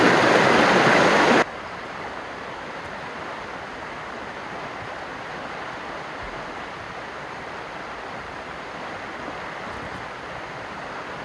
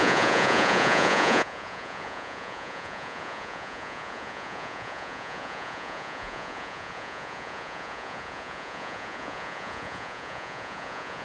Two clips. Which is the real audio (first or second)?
first